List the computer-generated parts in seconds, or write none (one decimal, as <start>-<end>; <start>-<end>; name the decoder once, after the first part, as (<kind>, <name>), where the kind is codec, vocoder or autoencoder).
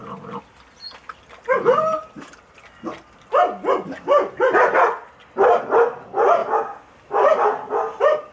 none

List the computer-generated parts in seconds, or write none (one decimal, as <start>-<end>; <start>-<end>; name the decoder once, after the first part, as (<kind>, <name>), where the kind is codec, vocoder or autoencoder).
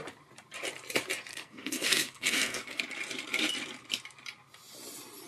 1.3-2.8 (codec, SNAC)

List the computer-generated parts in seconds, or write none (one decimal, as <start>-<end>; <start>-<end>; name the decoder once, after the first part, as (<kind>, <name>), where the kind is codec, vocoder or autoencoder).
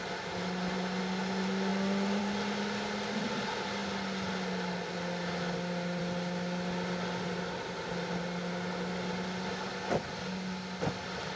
none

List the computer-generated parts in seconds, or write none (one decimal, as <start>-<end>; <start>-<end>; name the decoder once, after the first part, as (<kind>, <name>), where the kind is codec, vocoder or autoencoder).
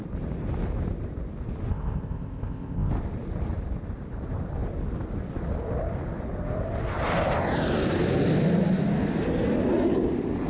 1.7-2.9 (codec, ZipCodec)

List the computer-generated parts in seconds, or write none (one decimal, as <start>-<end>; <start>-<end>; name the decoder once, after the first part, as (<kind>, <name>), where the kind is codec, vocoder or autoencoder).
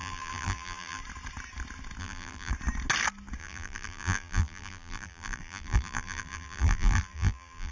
0.0-1.0 (vocoder, BigVGAN v2); 2.0-2.5; 3.4-7.7